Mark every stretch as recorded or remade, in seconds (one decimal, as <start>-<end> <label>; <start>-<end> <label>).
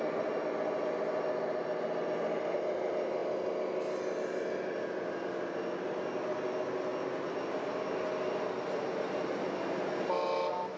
0.0-10.8 recorded